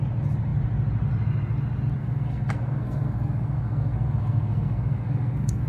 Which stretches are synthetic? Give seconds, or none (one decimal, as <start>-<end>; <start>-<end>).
2.0-5.7